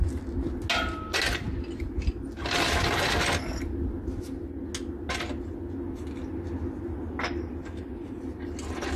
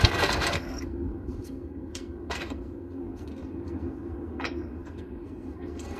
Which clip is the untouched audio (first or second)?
first